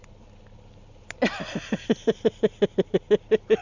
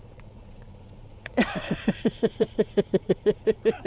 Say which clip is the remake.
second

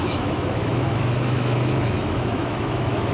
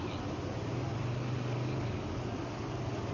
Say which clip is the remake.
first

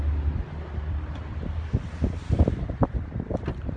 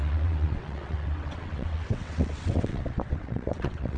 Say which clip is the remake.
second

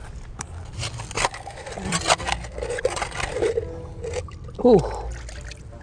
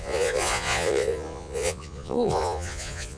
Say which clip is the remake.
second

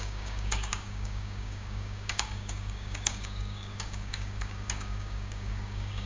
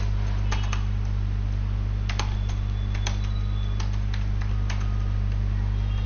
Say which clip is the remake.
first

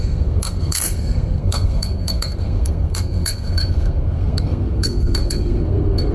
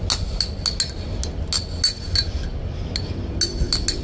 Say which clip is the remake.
first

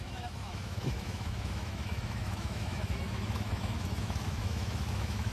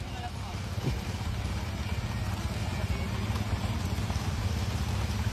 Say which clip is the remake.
first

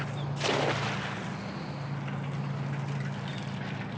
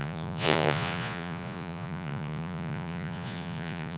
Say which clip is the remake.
second